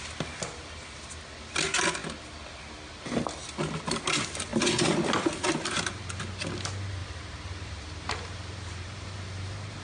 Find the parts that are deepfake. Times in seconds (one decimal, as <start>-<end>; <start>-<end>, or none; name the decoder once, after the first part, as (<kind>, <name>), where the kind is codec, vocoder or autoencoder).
7.0-9.8 (vocoder, BigVGAN v2)